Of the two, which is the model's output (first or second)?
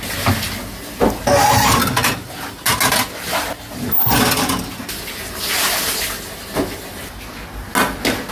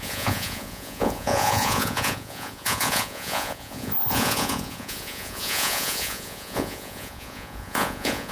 second